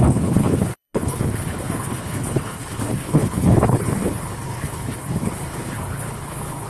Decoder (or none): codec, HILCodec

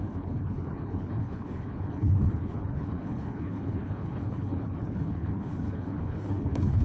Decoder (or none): codec, HILCodec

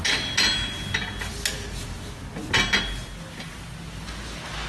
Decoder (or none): none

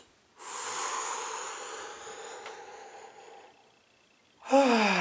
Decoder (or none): none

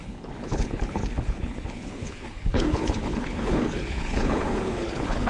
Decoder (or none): codec, HILCodec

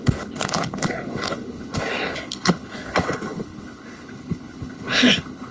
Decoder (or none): codec, HILCodec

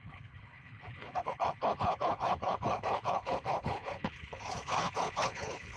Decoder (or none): codec, HILCodec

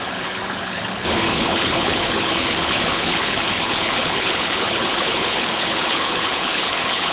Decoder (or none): codec, HILCodec